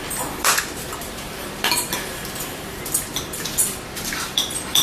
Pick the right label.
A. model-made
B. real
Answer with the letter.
A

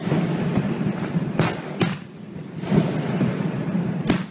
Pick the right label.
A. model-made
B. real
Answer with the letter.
B